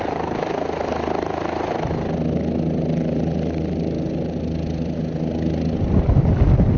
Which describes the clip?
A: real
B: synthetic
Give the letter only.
A